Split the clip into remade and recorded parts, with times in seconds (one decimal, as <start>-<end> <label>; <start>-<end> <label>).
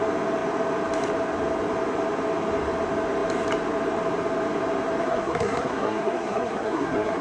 0.0-5.0 recorded; 5.0-7.2 remade